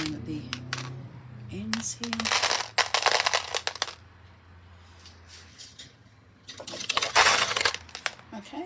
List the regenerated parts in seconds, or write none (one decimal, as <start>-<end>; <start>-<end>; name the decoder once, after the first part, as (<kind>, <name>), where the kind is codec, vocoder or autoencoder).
5.5-7.7 (vocoder, HiFi-GAN)